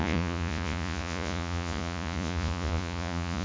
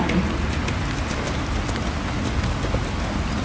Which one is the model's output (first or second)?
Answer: first